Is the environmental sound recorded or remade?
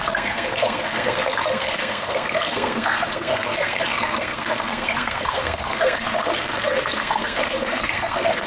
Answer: remade